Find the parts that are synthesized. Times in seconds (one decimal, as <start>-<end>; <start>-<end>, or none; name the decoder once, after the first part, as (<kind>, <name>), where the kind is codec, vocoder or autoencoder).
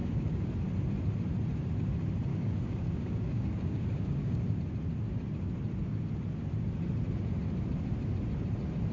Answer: 0.0-0.5 (codec, DAC); 2.3-4.6